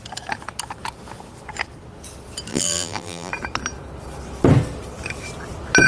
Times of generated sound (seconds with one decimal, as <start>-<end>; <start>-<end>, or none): 2.5-3.3